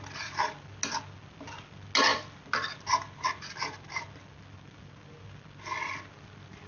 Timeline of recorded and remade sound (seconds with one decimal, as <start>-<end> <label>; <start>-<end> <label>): 0.0-6.7 recorded